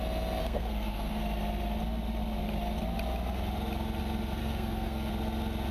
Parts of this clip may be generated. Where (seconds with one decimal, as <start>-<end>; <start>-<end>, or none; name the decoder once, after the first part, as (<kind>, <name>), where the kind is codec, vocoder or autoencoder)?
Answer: 0.4-1.2 (codec, SNAC); 4.4-5.1